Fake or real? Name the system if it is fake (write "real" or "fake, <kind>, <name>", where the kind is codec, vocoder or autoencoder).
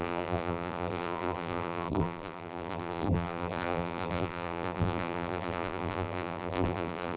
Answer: fake, vocoder, BigVGAN v2